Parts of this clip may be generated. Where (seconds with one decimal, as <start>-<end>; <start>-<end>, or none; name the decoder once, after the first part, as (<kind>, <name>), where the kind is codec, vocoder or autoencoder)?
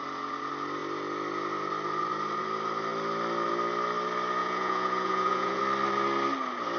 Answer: 4.4-5.6 (vocoder, Vocos)